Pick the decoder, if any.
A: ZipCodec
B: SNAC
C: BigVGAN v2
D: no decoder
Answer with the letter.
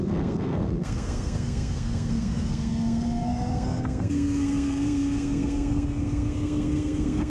B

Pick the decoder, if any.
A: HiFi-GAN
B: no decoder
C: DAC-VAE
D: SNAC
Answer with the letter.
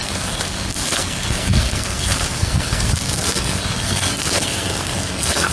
D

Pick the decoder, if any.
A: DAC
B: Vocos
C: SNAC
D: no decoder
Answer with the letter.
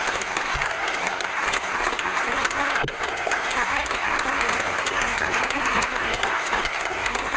C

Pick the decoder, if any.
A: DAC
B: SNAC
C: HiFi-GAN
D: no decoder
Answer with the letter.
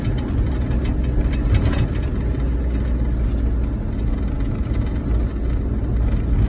D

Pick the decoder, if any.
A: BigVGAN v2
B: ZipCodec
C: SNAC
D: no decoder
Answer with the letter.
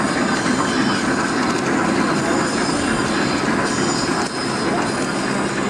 D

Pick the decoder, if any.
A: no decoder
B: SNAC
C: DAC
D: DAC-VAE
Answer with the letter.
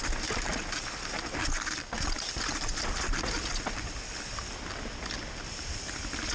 A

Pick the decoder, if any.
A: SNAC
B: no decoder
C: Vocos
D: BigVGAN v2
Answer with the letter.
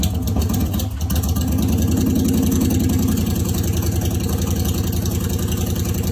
B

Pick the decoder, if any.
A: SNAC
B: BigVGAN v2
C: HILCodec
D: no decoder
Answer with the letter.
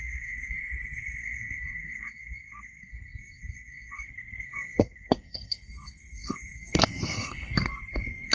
A